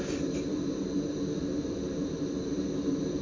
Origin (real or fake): real